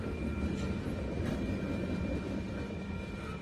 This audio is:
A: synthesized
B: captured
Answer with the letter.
B